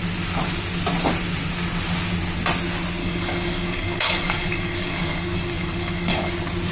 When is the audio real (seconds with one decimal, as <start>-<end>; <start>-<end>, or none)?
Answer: 0.0-3.0; 6.3-6.7